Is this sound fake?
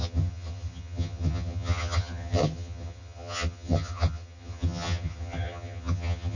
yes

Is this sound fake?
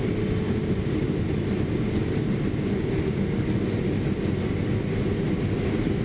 no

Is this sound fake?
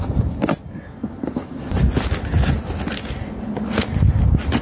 no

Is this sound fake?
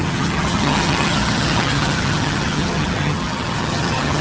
yes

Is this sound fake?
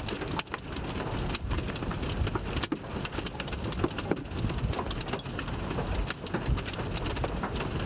no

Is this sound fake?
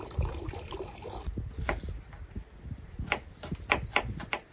no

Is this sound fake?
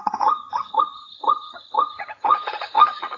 yes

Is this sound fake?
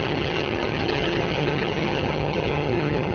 yes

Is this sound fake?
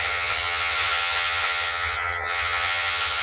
yes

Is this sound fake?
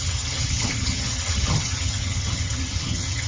yes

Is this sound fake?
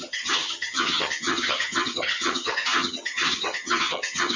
yes